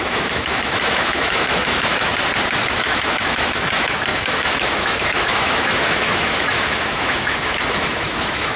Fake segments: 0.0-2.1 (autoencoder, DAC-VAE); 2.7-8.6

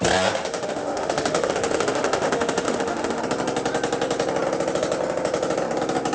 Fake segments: 0.4-3.2 (autoencoder, DAC-VAE)

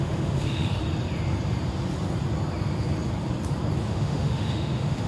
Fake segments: 0.0-0.8 (autoencoder, DAC-VAE); 3.9-5.1

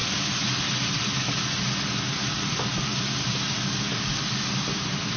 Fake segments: none

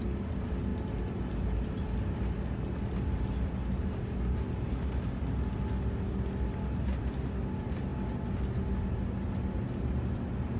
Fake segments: none